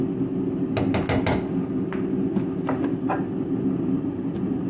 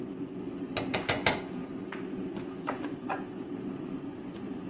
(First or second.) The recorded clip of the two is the first